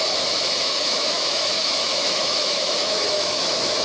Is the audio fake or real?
fake